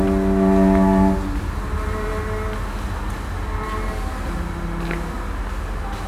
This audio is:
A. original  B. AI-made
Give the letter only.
A